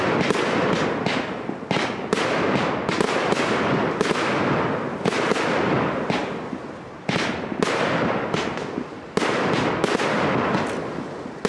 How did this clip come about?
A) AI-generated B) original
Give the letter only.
B